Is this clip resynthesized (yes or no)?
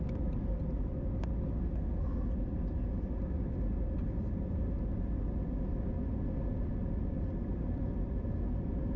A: no